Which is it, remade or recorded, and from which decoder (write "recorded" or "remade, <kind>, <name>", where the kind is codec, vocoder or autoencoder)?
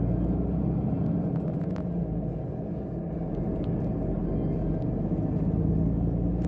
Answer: recorded